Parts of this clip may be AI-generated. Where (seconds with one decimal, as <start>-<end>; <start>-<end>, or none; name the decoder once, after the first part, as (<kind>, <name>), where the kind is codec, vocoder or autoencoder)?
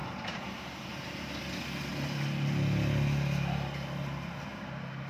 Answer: 0.0-0.7 (vocoder, BigVGAN v2)